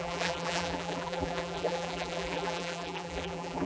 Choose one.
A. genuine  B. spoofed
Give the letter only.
B